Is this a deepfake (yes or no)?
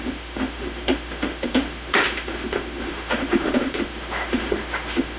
yes